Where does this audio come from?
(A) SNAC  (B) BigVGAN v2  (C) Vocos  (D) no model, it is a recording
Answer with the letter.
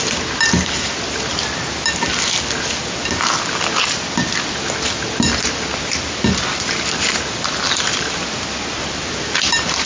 D